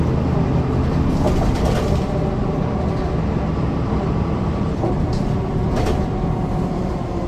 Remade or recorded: recorded